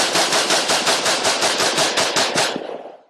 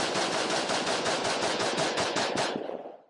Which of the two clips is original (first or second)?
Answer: first